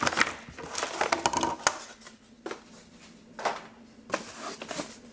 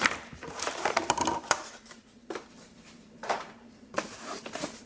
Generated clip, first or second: second